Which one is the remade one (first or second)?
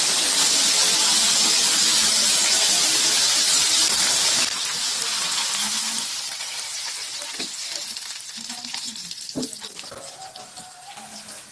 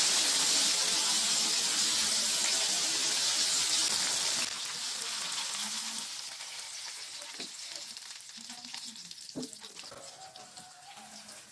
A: first